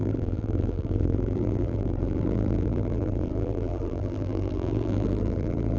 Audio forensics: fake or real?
fake